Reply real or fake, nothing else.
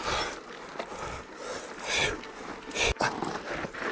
real